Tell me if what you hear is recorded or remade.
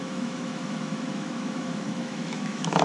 remade